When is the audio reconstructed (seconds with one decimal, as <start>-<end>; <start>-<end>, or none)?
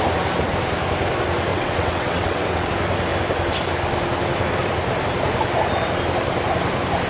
1.5-2.7